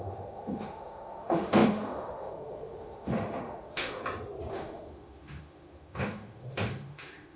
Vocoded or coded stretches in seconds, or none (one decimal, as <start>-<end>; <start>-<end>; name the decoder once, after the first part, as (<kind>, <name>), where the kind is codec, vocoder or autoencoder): 0.0-4.0 (autoencoder, DAC-VAE); 4.5-7.4